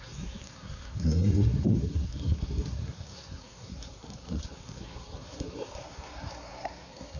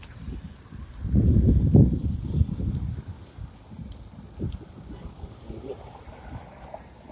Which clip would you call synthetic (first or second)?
first